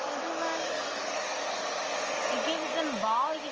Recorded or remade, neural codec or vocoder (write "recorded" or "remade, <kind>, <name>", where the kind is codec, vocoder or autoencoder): recorded